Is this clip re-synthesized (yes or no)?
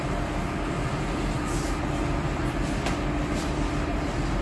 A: no